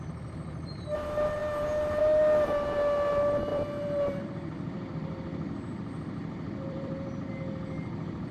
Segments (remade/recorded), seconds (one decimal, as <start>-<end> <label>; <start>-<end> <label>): 0.0-3.5 recorded; 3.5-7.3 remade; 7.3-8.3 recorded